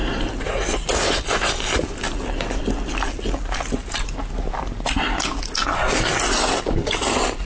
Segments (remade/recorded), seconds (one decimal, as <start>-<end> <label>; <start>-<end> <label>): 0.0-7.4 recorded